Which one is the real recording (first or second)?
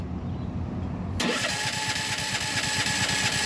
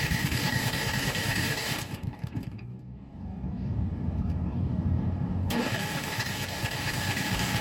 first